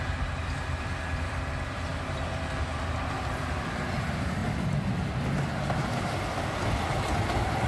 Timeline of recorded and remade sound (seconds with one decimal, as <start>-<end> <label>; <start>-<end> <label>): 0.0-1.9 remade; 1.9-2.6 recorded; 2.6-4.4 remade; 4.4-5.3 recorded; 5.3-7.7 remade